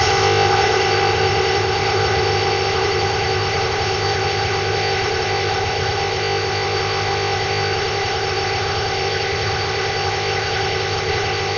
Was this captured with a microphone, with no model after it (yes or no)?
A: no